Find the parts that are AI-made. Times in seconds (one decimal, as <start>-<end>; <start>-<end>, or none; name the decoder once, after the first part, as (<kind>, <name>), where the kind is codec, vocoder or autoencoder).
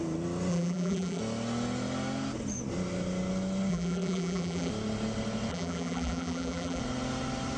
0.5-1.2 (vocoder, BigVGAN v2); 3.7-4.7; 5.5-6.8